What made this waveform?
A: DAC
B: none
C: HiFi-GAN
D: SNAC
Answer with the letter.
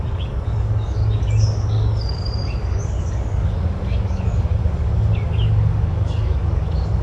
A